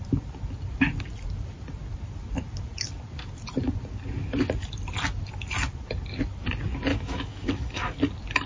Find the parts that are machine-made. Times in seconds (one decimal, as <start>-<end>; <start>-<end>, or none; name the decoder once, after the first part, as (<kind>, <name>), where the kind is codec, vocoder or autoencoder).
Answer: 6.9-8.0 (autoencoder, DAC-VAE)